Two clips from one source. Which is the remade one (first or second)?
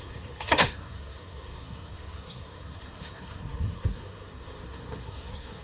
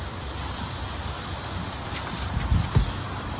first